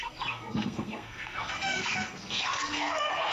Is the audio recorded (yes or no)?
no